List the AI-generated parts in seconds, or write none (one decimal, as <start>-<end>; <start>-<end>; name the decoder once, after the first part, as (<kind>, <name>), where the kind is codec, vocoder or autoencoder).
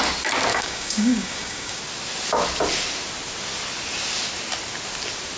0.5-1.8 (codec, DAC)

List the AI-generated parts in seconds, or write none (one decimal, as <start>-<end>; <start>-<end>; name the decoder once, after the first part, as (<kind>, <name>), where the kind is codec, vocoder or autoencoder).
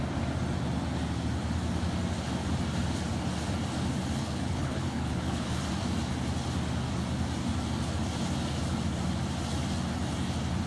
4.2-5.6 (codec, HILCodec)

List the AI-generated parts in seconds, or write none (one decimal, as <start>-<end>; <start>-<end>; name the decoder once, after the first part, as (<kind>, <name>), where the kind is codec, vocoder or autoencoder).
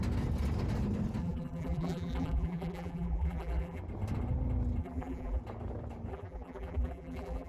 1.2-3.8 (vocoder, BigVGAN v2); 4.8-5.4; 6.1-7.5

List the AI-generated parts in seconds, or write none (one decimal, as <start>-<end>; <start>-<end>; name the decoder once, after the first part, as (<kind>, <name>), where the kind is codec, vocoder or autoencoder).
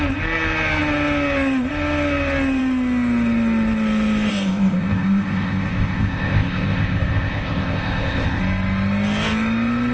4.3-8.4 (codec, ZipCodec)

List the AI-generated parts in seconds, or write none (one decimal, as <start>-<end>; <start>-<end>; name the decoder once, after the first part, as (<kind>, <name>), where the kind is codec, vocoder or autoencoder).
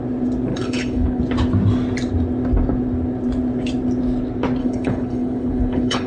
0.5-1.2 (codec, HILCodec); 4.6-6.1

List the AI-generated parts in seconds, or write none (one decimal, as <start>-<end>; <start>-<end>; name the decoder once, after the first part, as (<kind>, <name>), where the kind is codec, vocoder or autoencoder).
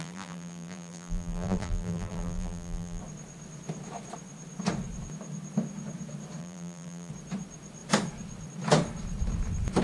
0.0-3.0 (vocoder, BigVGAN v2); 6.4-7.1